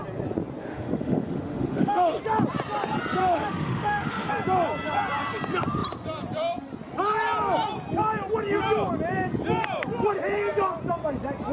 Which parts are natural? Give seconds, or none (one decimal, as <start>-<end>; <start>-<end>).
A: 0.0-0.6; 2.2-3.2; 4.3-11.5